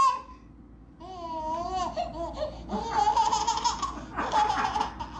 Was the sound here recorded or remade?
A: recorded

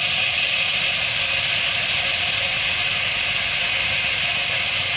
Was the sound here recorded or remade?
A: recorded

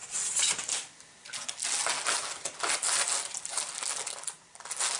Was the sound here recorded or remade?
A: recorded